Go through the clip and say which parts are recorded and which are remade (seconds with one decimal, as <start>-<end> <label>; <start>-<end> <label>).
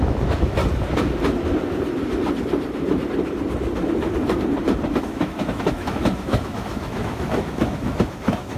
0.0-0.6 remade; 0.6-5.0 recorded; 5.0-8.6 remade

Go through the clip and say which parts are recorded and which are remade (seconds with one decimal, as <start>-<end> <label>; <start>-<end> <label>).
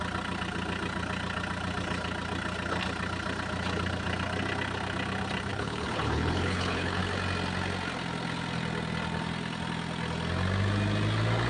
0.0-5.5 recorded; 5.5-7.0 remade; 7.0-11.5 recorded